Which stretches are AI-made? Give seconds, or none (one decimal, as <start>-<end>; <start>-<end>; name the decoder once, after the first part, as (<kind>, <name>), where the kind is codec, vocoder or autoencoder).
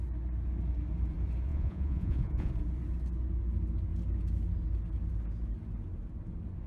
1.5-2.5 (vocoder, Vocos)